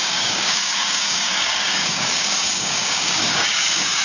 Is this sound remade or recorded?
remade